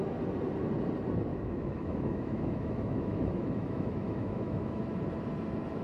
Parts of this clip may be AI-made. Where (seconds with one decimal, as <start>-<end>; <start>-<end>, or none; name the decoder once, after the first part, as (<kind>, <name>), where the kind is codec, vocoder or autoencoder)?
1.3-4.8 (autoencoder, DAC-VAE)